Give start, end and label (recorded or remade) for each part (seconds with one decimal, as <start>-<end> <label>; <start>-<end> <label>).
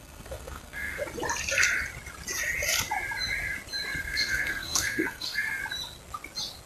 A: 0.0-1.0 remade; 1.0-4.0 recorded; 4.0-5.6 remade; 5.6-6.7 recorded